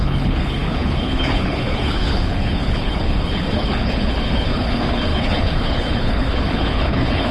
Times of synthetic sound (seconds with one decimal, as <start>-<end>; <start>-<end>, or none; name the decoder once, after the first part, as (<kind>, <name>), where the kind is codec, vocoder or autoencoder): 0.0-7.3 (codec, HILCodec)